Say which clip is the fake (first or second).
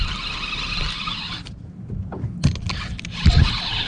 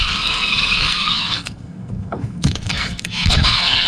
second